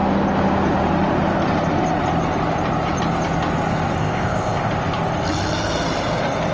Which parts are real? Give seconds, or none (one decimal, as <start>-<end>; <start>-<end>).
0.0-4.0; 4.7-6.5